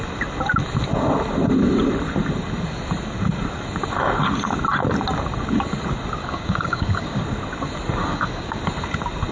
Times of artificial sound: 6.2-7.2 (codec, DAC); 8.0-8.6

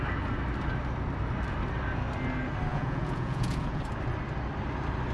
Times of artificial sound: 2.7-3.8 (vocoder, Vocos)

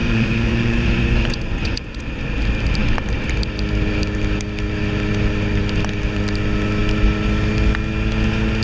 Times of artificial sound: 0.0-2.0 (vocoder, Vocos)

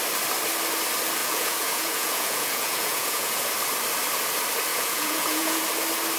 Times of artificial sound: 1.2-3.5 (vocoder, Vocos); 4.7-5.6

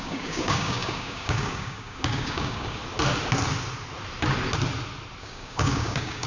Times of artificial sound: 0.0-2.8 (codec, DAC); 5.2-6.3

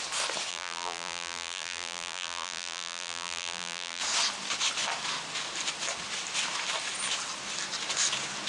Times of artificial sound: 0.5-4.0 (vocoder, BigVGAN v2)

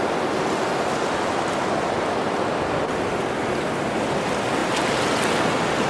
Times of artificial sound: none